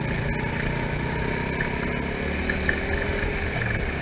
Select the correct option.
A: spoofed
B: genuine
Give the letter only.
B